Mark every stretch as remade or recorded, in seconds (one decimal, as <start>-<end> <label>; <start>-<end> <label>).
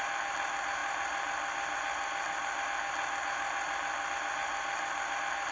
0.0-5.5 recorded